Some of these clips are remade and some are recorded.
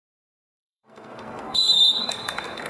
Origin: remade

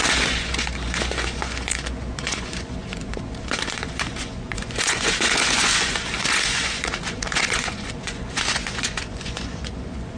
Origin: remade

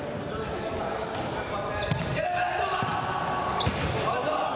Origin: recorded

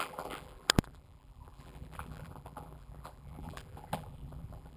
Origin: remade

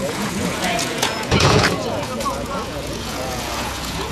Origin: remade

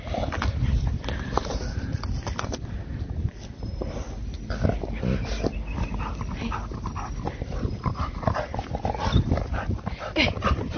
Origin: recorded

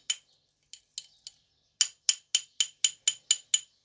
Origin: recorded